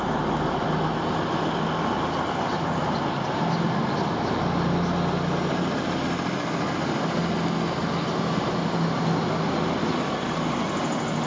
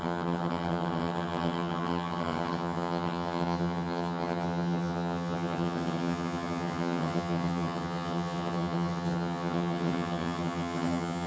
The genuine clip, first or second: first